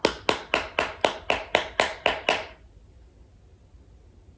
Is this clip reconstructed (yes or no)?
no